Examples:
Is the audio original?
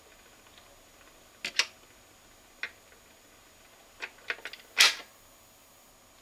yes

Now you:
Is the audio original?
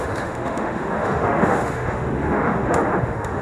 no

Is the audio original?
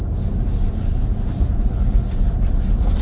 yes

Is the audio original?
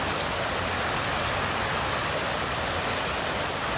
yes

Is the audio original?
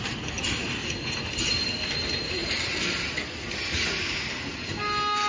yes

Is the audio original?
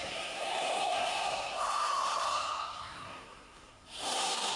no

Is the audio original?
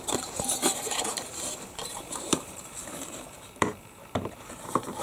no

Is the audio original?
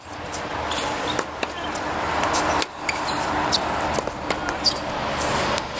yes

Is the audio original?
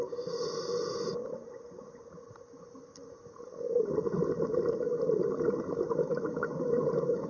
yes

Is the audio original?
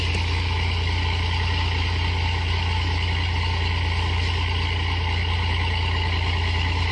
yes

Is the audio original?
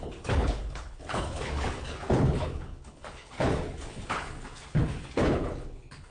no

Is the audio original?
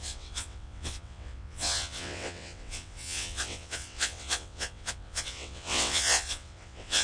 no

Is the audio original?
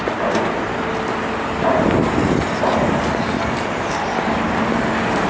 yes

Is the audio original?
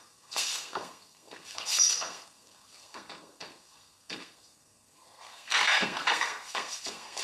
no